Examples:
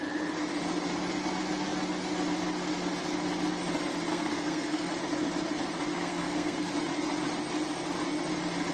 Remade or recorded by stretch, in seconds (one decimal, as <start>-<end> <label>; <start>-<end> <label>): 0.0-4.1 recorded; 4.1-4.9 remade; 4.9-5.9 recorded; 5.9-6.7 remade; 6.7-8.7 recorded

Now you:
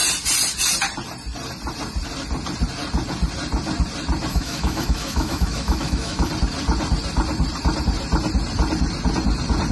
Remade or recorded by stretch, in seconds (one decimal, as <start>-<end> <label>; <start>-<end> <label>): 0.0-4.3 recorded; 4.3-6.3 remade; 6.3-9.7 recorded

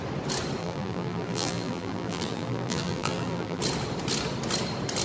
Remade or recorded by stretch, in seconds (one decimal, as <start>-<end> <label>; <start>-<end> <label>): 0.0-0.6 recorded; 0.6-3.6 remade; 3.6-5.0 recorded